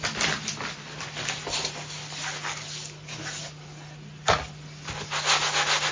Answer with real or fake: real